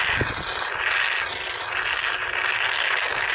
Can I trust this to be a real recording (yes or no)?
yes